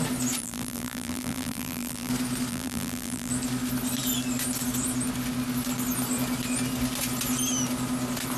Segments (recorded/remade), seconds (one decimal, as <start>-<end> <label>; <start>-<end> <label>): 0.0-0.4 recorded; 0.4-2.1 remade; 2.1-2.5 recorded; 2.5-3.3 remade; 3.3-8.4 recorded